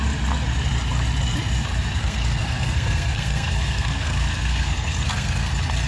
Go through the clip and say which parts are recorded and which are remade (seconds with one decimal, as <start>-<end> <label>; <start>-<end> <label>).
0.0-2.0 recorded; 2.0-5.5 remade; 5.5-5.9 recorded